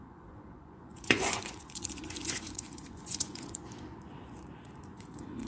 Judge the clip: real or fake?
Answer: fake